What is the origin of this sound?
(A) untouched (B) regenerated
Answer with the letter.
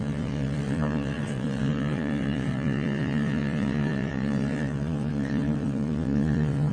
B